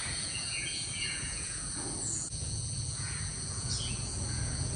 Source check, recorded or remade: remade